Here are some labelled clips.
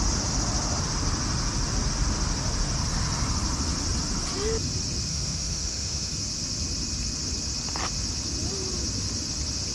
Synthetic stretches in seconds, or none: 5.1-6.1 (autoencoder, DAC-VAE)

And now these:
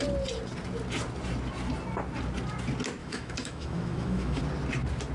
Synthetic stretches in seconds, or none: 3.0-4.4 (autoencoder, DAC-VAE)

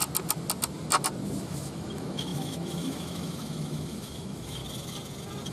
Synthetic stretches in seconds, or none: 1.4-4.6 (autoencoder, DAC-VAE)

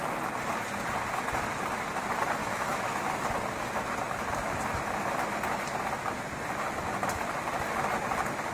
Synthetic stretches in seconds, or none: 2.4-3.3 (autoencoder, DAC-VAE)

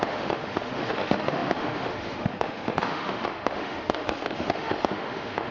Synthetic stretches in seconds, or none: 0.0-5.5 (autoencoder, DAC-VAE)

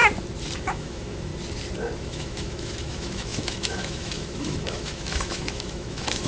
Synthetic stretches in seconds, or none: 0.6-1.3 (autoencoder, DAC-VAE); 2.0-6.3

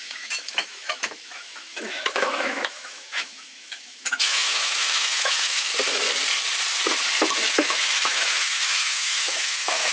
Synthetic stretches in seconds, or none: 0.0-5.7 (autoencoder, DAC-VAE); 7.5-9.9

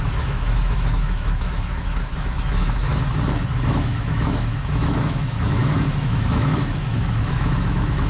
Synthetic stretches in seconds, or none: 0.0-2.9 (autoencoder, DAC-VAE); 3.7-8.1